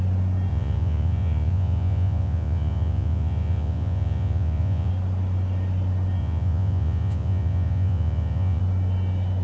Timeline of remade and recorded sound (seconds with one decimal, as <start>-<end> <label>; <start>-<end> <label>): 0.0-0.5 recorded; 0.5-4.9 remade; 4.9-6.2 recorded; 6.2-8.6 remade; 8.6-9.4 recorded